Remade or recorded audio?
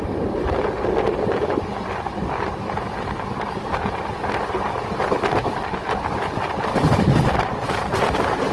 recorded